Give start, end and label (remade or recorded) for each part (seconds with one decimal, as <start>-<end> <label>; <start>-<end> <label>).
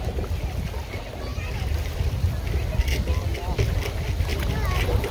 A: 0.0-1.3 recorded; 1.3-2.3 remade; 2.3-5.1 recorded